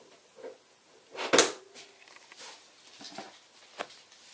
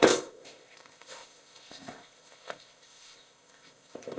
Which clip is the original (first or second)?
first